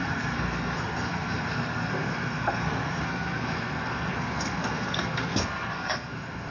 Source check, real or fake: fake